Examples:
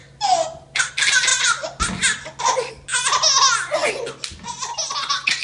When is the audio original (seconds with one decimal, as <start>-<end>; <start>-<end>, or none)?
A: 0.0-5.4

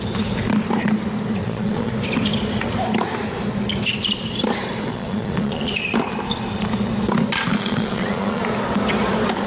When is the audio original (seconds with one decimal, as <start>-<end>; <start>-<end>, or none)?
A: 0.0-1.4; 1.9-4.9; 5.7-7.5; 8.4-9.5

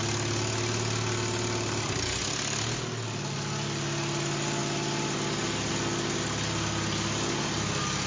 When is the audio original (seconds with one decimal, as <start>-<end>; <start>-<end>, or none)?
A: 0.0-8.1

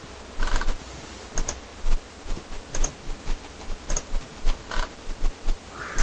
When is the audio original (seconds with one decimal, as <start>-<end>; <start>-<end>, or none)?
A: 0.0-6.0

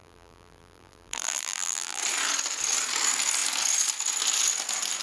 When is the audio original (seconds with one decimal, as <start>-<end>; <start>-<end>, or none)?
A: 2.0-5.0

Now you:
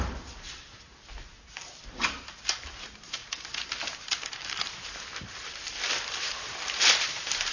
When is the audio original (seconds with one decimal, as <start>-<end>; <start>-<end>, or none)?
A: 3.2-3.8